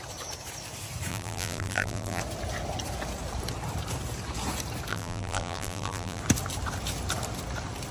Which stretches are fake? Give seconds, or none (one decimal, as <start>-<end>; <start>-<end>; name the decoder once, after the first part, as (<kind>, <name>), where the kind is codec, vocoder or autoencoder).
1.1-2.2 (vocoder, BigVGAN v2); 4.9-6.2